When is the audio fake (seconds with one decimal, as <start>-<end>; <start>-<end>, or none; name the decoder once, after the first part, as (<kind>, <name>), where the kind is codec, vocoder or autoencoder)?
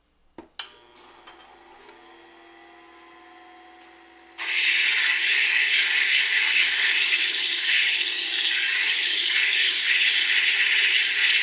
5.0-9.9 (codec, DAC)